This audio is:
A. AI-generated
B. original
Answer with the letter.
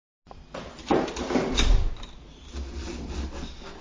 B